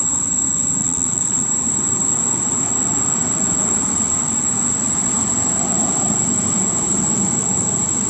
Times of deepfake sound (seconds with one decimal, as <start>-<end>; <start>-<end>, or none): 0.8-1.4